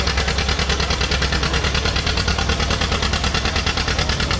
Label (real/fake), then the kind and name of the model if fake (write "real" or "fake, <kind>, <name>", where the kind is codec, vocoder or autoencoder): real